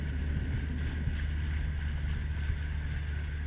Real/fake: real